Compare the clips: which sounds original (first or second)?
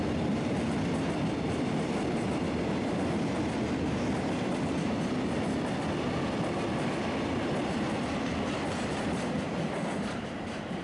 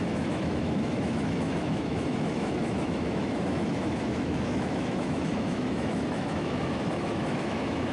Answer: first